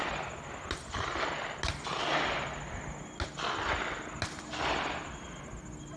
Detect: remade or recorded recorded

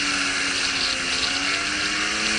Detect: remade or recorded recorded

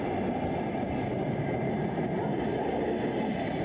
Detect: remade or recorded recorded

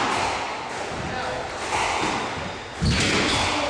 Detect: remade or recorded recorded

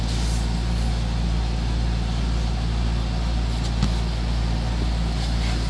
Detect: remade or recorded recorded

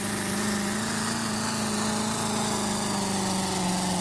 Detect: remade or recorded recorded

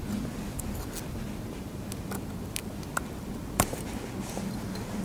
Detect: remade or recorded recorded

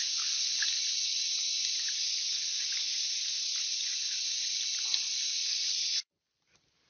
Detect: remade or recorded recorded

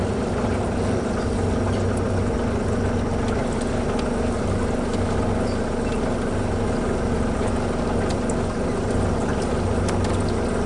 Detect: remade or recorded recorded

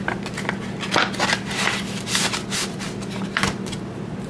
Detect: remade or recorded recorded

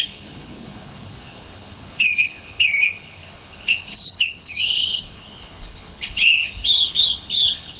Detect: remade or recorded remade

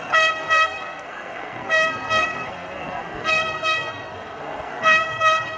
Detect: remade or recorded remade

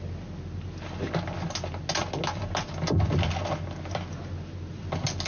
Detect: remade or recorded recorded